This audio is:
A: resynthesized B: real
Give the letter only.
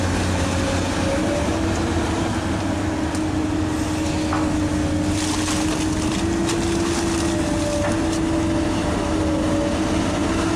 B